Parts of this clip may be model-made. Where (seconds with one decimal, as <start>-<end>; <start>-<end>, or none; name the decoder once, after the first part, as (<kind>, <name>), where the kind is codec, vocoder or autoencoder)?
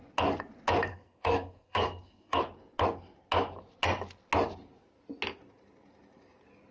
0.9-2.4 (codec, SNAC)